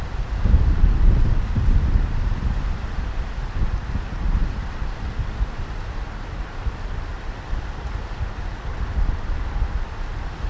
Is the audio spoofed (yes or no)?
no